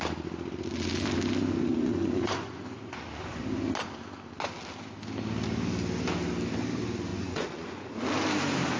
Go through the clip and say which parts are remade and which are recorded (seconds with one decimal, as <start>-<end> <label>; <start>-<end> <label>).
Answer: 0.0-1.7 recorded; 1.7-3.4 remade; 3.4-7.1 recorded; 7.1-7.9 remade; 7.9-8.8 recorded